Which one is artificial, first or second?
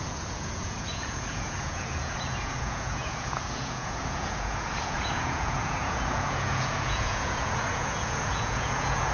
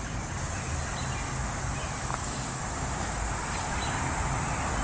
first